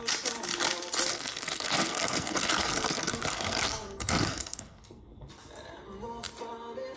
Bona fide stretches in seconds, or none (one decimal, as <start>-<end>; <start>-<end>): 0.0-1.1; 5.3-7.0